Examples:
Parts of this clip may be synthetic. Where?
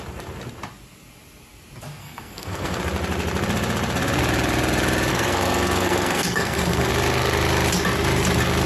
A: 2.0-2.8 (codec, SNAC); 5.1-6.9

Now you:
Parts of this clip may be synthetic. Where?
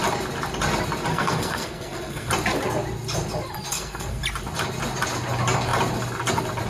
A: 1.1-2.3 (codec, SNAC); 3.7-4.2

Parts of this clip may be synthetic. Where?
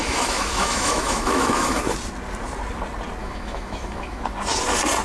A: 0.0-1.8 (autoencoder, DAC-VAE); 3.2-4.2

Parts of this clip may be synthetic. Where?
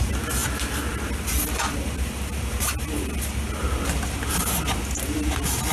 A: none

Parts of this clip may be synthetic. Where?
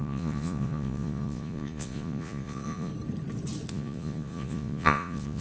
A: 0.0-2.9 (vocoder, Vocos); 3.7-5.4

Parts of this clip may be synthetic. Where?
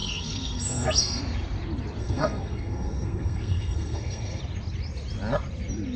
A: 0.0-1.2 (codec, SNAC); 2.0-4.4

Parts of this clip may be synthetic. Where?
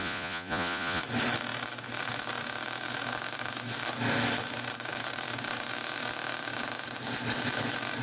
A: 0.0-1.0 (vocoder, Vocos)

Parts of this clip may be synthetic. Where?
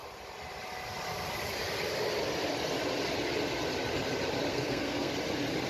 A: 4.5-5.1 (codec, SNAC)